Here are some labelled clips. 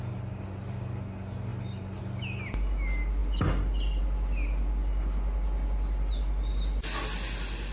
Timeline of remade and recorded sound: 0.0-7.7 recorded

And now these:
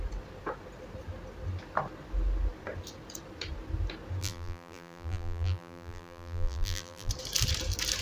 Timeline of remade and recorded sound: 0.0-4.2 recorded; 4.2-7.1 remade; 7.1-8.0 recorded

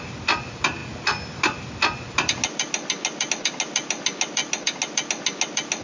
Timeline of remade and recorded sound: 0.0-5.8 recorded